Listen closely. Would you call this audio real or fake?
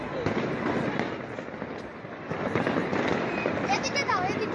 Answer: real